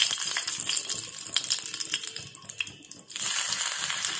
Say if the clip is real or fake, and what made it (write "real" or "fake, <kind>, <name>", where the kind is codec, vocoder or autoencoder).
fake, vocoder, BigVGAN v2